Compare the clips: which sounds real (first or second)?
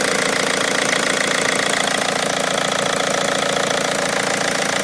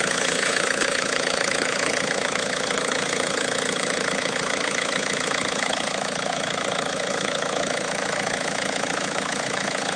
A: first